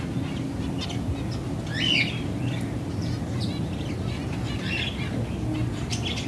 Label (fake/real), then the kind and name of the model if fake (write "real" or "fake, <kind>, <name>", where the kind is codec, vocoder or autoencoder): real